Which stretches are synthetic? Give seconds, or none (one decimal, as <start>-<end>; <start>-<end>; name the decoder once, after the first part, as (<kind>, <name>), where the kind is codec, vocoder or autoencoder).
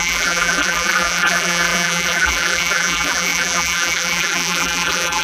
0.0-5.2 (vocoder, BigVGAN v2)